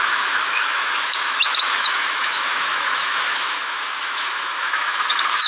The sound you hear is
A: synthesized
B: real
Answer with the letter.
A